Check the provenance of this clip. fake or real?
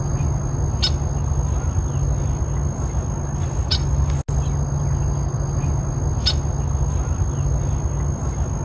real